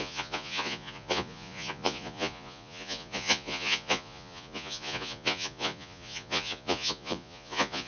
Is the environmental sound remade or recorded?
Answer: remade